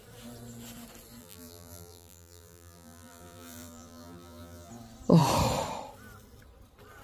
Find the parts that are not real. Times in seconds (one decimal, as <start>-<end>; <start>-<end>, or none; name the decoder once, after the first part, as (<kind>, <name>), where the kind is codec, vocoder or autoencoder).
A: 1.2-4.7 (vocoder, BigVGAN v2)